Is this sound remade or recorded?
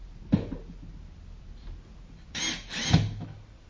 recorded